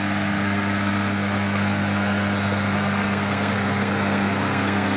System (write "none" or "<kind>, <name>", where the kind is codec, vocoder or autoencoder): codec, SNAC